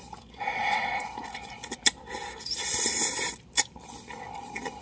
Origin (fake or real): real